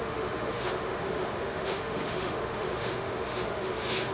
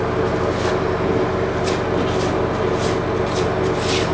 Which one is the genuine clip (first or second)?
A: second